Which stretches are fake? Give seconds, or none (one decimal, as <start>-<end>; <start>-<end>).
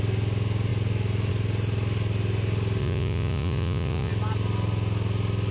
2.8-4.1